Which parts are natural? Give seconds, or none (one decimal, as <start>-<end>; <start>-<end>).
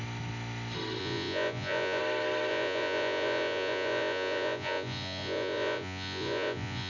0.0-1.0; 2.0-2.5